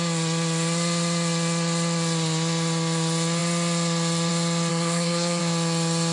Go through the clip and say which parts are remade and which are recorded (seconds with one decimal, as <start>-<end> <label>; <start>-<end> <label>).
0.0-4.7 recorded; 4.7-5.4 remade; 5.4-6.1 recorded